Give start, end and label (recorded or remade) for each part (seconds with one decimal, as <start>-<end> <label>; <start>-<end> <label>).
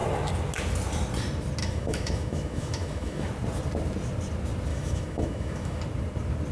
0.0-1.6 recorded; 1.6-3.3 remade; 3.3-4.7 recorded; 4.7-5.8 remade; 5.8-6.5 recorded